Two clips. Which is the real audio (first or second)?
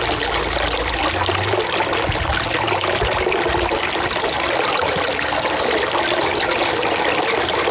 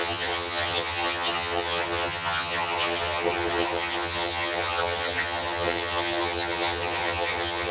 first